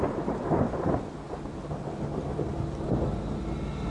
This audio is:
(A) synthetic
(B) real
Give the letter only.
B